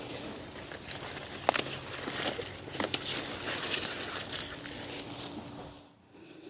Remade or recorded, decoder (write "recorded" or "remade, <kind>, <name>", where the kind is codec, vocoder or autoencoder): recorded